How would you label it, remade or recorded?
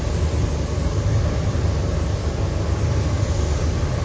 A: recorded